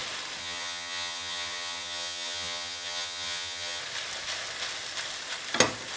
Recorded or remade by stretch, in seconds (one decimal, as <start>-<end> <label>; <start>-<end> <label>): 0.0-0.4 recorded; 0.4-3.8 remade; 3.8-6.0 recorded